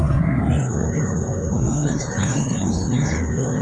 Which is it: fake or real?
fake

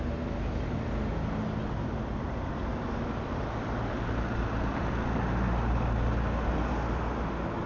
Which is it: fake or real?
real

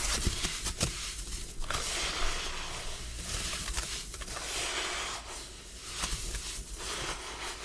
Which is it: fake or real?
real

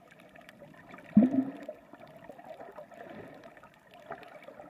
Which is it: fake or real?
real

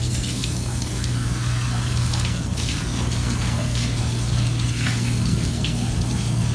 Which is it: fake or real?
fake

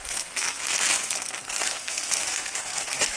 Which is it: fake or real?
fake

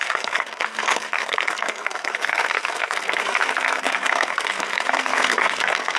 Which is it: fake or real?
fake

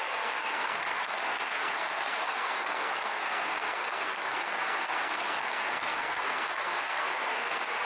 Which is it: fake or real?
fake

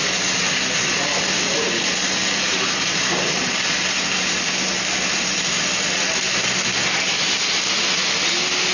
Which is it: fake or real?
real